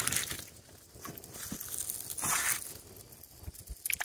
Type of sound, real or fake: real